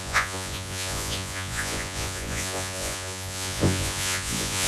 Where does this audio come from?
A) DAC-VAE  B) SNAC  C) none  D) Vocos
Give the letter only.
D